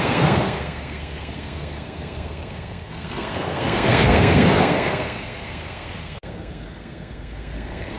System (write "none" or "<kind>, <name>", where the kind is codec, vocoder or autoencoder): codec, SNAC